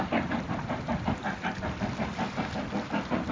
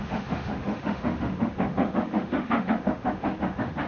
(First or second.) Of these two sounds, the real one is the first